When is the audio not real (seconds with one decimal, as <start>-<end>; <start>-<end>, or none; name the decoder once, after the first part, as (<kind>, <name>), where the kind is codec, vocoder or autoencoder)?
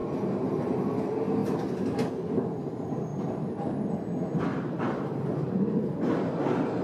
4.5-6.1 (vocoder, BigVGAN v2)